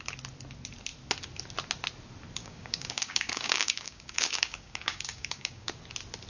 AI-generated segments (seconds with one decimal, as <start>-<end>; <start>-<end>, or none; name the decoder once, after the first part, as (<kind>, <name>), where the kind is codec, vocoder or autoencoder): 2.4-5.7 (codec, DAC)